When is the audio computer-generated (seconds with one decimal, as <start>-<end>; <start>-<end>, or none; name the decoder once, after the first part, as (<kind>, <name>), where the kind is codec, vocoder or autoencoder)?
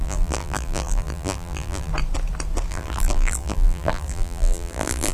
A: 0.0-1.9 (vocoder, BigVGAN v2); 2.7-5.1